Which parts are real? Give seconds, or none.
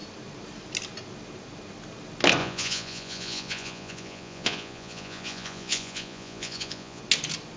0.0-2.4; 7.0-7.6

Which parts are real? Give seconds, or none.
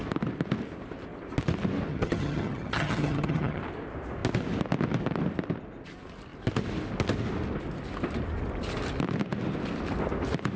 0.0-1.9; 3.6-10.6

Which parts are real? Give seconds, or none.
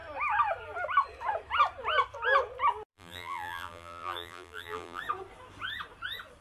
0.0-2.9; 5.0-6.4